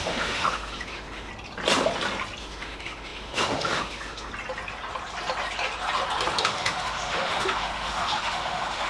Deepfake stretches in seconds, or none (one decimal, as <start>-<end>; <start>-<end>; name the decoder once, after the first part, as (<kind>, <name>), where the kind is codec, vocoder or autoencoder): 0.0-1.3 (autoencoder, DAC-VAE); 2.4-4.3; 6.3-8.9